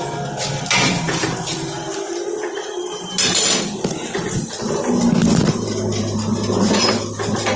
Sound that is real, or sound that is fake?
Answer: real